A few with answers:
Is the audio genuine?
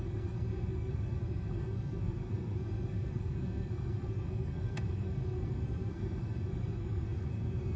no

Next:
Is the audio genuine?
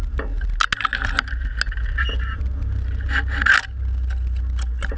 yes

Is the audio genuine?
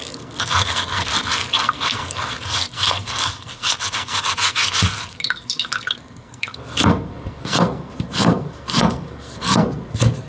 no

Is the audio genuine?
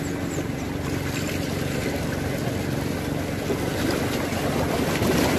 yes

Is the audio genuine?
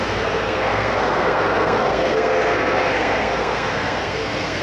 no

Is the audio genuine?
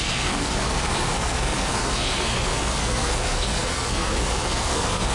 no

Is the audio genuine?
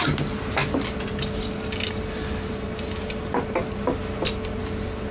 yes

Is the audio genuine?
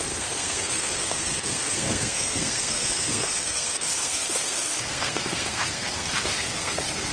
no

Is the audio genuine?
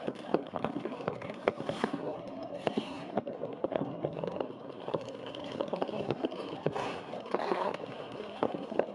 no